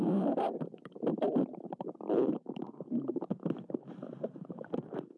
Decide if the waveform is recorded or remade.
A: remade